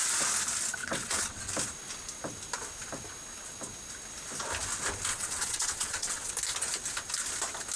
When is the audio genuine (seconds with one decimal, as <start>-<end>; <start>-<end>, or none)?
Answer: 0.0-0.8; 1.5-5.1; 6.3-7.8